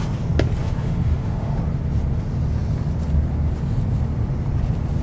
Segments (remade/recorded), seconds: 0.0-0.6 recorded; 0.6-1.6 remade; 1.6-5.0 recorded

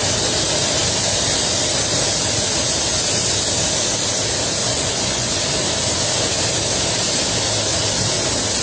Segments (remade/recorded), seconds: 0.0-4.6 recorded; 4.6-5.4 remade; 5.4-8.6 recorded

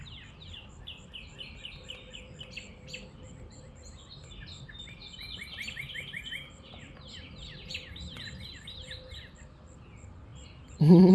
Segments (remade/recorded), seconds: 0.0-2.7 recorded; 2.7-3.6 remade; 3.6-5.0 recorded; 5.0-9.0 remade; 9.0-10.3 recorded; 10.3-11.1 remade

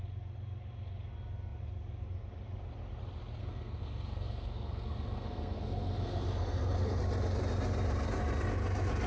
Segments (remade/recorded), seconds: 0.0-3.4 recorded; 3.4-7.0 remade; 7.0-9.1 recorded

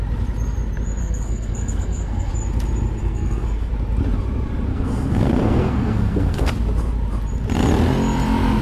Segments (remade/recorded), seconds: 0.0-1.0 recorded; 1.0-2.3 remade; 2.3-3.0 recorded; 3.0-3.7 remade; 3.7-4.7 recorded; 4.7-6.5 remade; 6.5-8.6 recorded

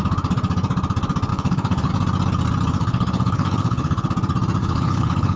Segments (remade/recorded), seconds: 0.0-1.3 recorded; 1.3-1.9 remade; 1.9-2.8 recorded; 2.8-4.1 remade; 4.1-4.6 recorded; 4.6-5.4 remade